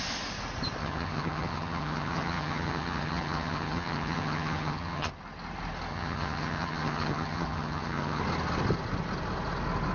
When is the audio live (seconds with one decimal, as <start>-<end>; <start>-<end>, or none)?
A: 0.0-0.8; 5.1-5.9; 8.2-9.9